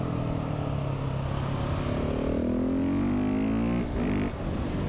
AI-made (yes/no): no